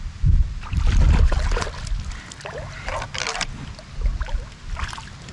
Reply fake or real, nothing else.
real